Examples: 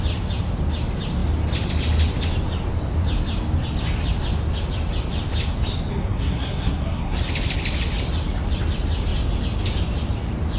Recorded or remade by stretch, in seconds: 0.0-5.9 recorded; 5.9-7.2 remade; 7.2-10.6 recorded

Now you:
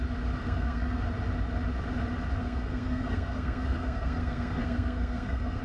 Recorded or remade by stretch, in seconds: 0.0-0.4 recorded; 0.4-1.0 remade; 1.0-2.4 recorded; 2.4-5.6 remade

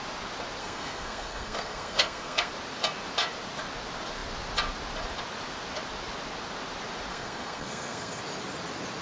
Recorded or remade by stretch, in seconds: 0.0-0.6 recorded; 0.6-2.5 remade; 2.5-7.1 recorded; 7.1-8.2 remade; 8.2-9.0 recorded

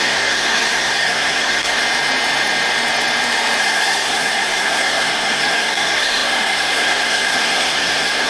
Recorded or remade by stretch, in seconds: 0.0-1.8 remade; 1.8-3.6 recorded; 3.6-8.3 remade

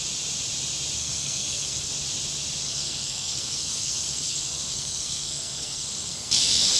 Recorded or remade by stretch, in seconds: 0.0-1.0 recorded; 1.0-1.9 remade; 1.9-2.6 recorded; 2.6-6.8 remade

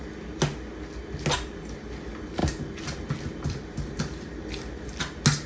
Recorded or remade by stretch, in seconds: 0.0-5.5 recorded

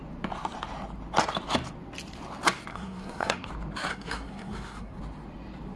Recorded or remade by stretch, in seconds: 0.0-2.7 recorded; 2.7-3.5 remade; 3.5-3.9 recorded; 3.9-5.0 remade; 5.0-5.8 recorded